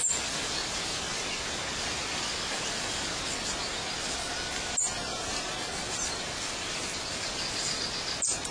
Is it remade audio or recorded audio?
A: recorded